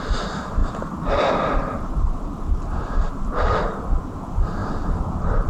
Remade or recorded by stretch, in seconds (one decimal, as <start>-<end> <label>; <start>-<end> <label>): 0.0-5.5 recorded